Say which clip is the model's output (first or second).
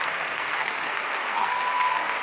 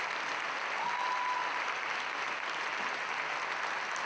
first